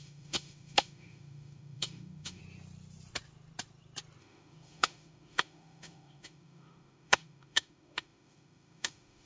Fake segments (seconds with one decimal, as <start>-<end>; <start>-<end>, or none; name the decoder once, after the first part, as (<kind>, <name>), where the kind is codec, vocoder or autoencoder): 0.0-2.4 (autoencoder, DAC-VAE); 4.2-9.3